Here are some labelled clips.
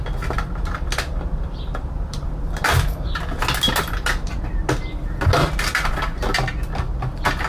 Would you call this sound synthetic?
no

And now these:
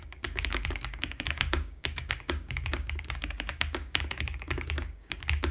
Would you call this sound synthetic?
yes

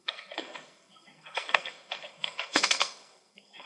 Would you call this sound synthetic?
yes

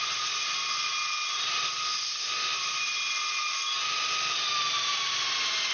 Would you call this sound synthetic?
no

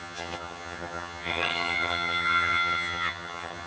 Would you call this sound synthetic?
yes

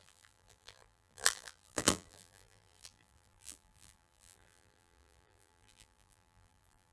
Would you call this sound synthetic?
yes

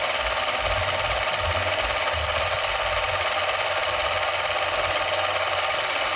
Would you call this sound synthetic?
no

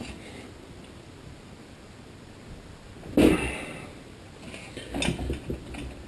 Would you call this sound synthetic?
no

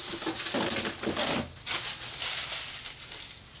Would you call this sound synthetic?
no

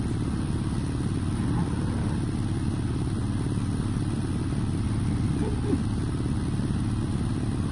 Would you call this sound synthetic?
no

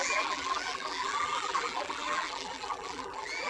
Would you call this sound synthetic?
yes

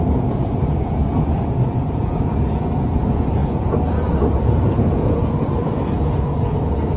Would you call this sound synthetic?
yes